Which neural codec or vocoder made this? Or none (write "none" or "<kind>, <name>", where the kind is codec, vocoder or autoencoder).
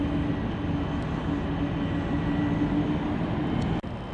none